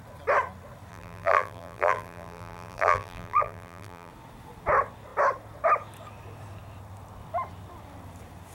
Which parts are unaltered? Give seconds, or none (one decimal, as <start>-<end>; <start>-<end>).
0.0-0.9; 4.1-8.5